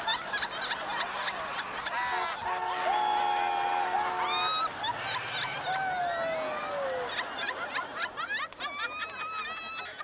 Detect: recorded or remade recorded